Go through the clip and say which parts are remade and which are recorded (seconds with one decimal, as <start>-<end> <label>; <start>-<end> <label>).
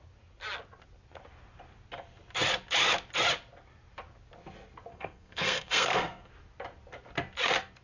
0.0-4.9 recorded; 4.9-6.3 remade; 6.3-7.8 recorded